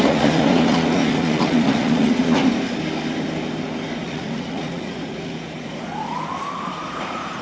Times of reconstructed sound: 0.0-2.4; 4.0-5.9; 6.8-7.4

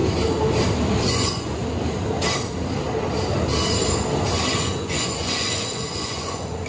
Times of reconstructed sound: 1.1-1.6; 4.5-6.7

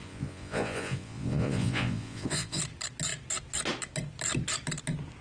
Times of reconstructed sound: 0.0-2.6

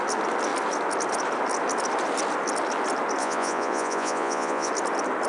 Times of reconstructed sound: 3.2-4.7

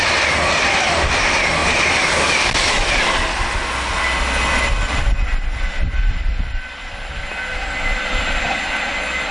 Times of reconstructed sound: none

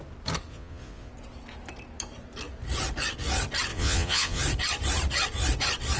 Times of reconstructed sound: 0.5-1.1; 3.7-4.4

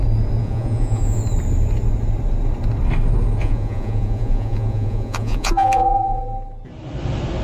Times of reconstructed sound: 0.4-1.2; 3.4-6.2

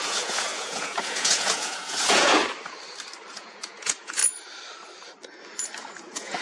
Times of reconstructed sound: 0.0-2.4; 3.3-4.2; 6.0-6.4